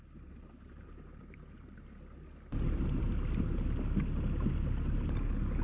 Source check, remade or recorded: recorded